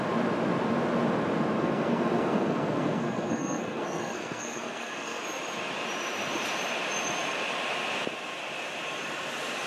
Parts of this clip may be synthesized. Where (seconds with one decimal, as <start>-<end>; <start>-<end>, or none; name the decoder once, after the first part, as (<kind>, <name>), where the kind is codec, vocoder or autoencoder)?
1.6-5.2 (codec, SNAC)